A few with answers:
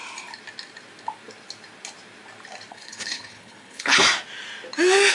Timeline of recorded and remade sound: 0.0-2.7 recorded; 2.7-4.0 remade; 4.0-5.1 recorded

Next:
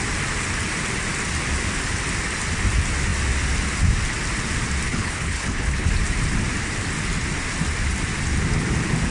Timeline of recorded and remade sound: 0.0-4.9 recorded; 4.9-5.9 remade; 5.9-9.1 recorded

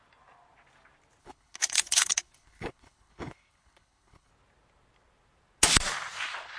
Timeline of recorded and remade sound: 0.0-1.2 recorded; 1.2-4.3 remade; 4.3-6.6 recorded

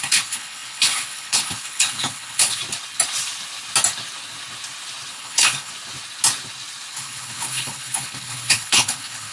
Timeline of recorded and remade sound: 0.0-2.6 remade; 2.6-5.1 recorded; 5.1-5.7 remade; 5.7-6.9 recorded; 6.9-9.3 remade

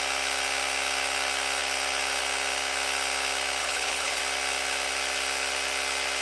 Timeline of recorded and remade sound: 0.0-3.6 recorded; 3.6-4.2 remade; 4.2-6.2 recorded

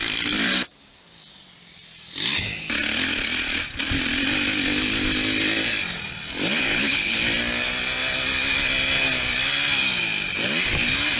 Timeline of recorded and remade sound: 0.0-6.7 recorded; 6.7-7.2 remade; 7.2-11.2 recorded